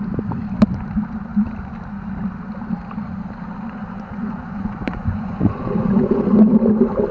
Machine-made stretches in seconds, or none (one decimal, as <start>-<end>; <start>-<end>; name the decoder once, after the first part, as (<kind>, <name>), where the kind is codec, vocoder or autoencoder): 3.8-6.2 (vocoder, Vocos)